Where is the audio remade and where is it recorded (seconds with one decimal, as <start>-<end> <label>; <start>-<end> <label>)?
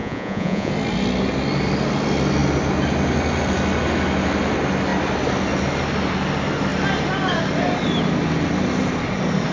0.0-0.7 remade; 0.7-9.5 recorded